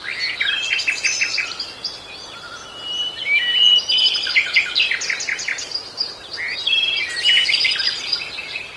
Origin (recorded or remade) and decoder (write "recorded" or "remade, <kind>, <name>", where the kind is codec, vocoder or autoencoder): recorded